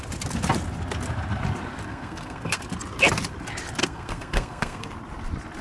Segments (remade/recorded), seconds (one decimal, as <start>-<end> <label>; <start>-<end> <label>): 0.0-1.9 recorded; 1.9-2.6 remade; 2.6-3.8 recorded; 3.8-4.9 remade; 4.9-5.6 recorded